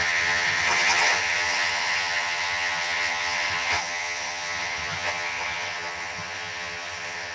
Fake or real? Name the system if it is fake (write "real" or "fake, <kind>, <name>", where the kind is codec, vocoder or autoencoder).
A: fake, vocoder, HiFi-GAN